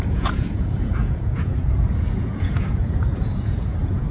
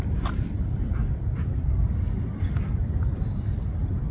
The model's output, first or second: first